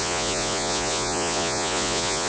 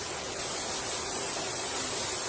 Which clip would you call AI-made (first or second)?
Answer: first